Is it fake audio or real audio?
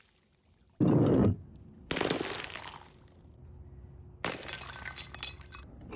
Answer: real